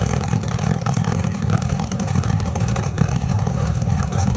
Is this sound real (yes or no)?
no